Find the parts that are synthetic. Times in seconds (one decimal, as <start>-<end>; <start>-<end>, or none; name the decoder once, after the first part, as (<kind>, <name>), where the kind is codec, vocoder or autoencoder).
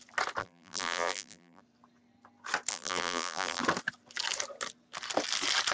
0.4-1.6 (vocoder, BigVGAN v2); 2.7-3.6